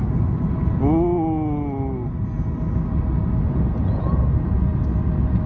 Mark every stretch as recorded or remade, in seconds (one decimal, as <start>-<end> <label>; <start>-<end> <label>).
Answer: 0.0-5.5 recorded